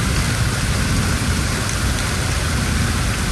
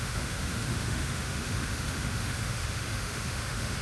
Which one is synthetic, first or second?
second